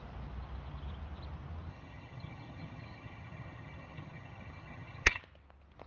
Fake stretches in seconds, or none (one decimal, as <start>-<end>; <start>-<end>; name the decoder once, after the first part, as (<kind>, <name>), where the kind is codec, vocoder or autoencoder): 1.7-5.2 (vocoder, HiFi-GAN)